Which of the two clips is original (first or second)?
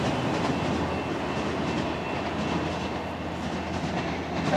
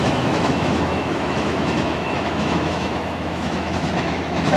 first